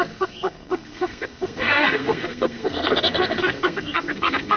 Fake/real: fake